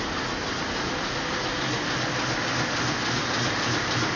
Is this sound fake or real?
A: real